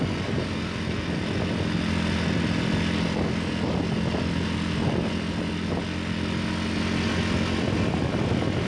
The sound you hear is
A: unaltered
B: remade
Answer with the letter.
A